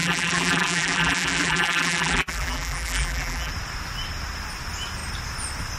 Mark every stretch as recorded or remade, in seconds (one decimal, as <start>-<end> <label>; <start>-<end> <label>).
0.0-3.5 remade; 3.5-5.8 recorded